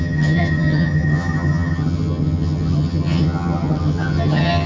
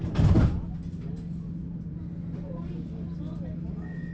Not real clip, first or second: first